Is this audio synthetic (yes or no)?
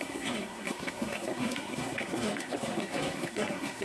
yes